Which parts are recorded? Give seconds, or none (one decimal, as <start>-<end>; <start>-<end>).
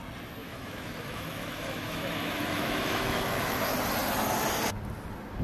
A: 0.0-0.4; 3.6-5.4